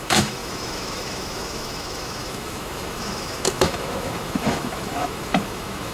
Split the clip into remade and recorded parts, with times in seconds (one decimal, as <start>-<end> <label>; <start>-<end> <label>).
0.0-5.9 remade